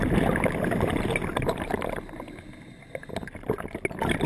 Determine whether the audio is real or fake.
real